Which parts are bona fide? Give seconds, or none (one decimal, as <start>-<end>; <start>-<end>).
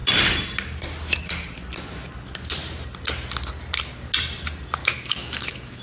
0.0-4.8